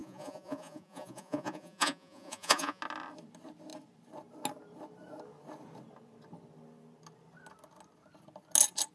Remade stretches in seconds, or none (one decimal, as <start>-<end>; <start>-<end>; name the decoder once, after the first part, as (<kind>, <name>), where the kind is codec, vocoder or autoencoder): 0.0-2.8 (vocoder, Vocos)

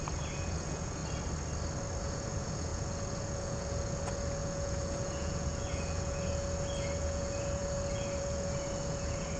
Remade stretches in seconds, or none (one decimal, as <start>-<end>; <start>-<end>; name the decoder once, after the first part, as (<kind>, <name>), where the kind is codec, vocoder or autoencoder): 0.0-1.0 (vocoder, Vocos); 2.0-9.4

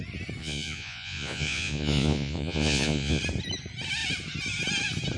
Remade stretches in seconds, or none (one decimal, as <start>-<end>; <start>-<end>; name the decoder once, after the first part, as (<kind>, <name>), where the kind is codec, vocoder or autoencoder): 0.4-3.2 (vocoder, Vocos)